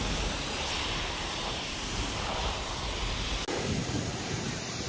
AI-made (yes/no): no